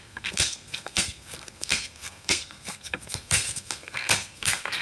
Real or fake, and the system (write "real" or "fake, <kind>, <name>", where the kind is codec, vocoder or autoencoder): fake, codec, SNAC